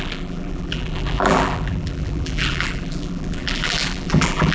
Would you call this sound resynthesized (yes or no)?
yes